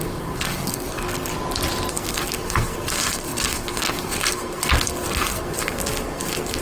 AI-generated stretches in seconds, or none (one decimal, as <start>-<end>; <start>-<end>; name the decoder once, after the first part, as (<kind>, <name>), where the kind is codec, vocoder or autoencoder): 0.0-1.3 (codec, SNAC); 1.9-6.6